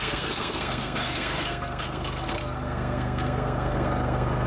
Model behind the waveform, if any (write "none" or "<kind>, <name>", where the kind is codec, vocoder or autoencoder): codec, SNAC